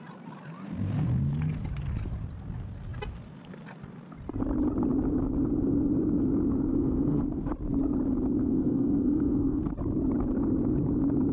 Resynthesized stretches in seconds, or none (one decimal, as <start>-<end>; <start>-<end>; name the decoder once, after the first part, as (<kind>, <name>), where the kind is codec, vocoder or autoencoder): 6.7-7.2 (codec, SNAC); 8.4-9.6